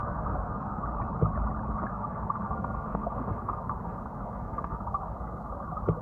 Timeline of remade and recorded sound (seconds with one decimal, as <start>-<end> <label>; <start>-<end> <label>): 0.0-0.8 remade; 0.8-1.9 recorded; 1.9-5.5 remade; 5.5-6.0 recorded